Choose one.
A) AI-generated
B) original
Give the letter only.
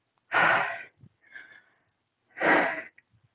B